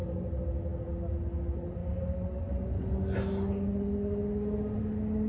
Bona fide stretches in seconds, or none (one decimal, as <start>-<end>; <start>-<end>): 0.0-5.3